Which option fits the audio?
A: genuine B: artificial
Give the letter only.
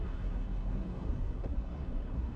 B